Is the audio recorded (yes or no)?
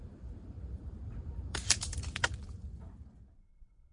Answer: no